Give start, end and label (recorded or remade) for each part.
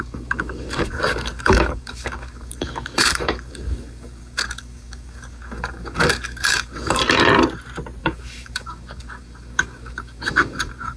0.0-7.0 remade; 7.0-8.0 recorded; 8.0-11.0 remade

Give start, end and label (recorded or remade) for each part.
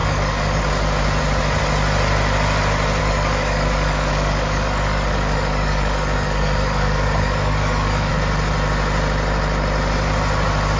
0.0-0.6 remade; 0.6-3.0 recorded; 3.0-8.1 remade; 8.1-10.8 recorded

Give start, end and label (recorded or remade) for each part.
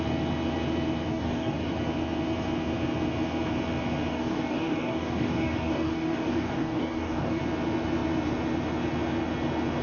0.0-1.1 recorded; 1.1-1.7 remade; 1.7-4.1 recorded; 4.1-7.4 remade; 7.4-9.8 recorded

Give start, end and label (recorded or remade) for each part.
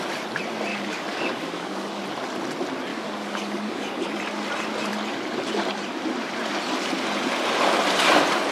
0.0-0.7 recorded; 0.7-2.0 remade; 2.0-2.9 recorded; 2.9-4.2 remade; 4.2-8.5 recorded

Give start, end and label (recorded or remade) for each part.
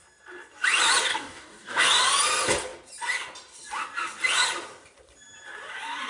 0.0-1.1 recorded; 1.1-1.9 remade; 1.9-6.1 recorded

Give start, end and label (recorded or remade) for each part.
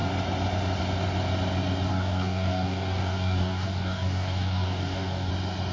0.0-1.9 recorded; 1.9-5.3 remade; 5.3-5.7 recorded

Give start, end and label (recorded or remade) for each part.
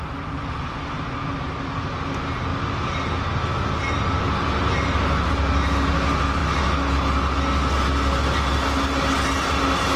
0.0-10.0 recorded